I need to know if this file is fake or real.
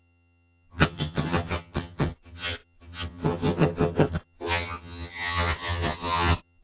fake